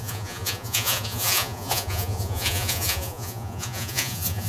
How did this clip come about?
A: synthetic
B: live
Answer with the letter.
A